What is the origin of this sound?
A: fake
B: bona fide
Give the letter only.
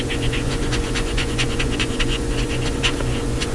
A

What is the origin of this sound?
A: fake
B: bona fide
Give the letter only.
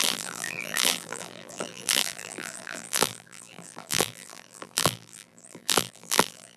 A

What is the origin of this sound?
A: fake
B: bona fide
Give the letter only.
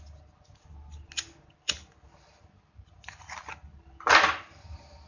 B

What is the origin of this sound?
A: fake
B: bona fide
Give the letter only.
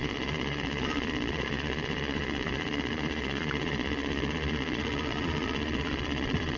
A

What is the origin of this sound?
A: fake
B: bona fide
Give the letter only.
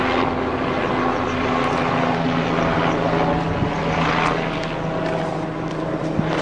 B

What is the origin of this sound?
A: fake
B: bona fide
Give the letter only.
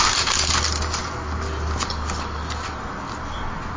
B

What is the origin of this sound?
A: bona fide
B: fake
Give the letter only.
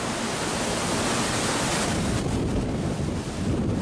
A